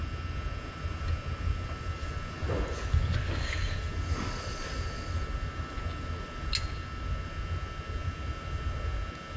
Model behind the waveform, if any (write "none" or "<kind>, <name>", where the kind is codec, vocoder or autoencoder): none